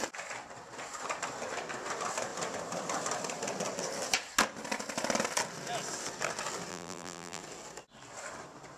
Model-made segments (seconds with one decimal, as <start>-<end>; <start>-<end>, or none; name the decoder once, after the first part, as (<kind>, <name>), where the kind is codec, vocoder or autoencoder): 6.7-7.4 (vocoder, BigVGAN v2)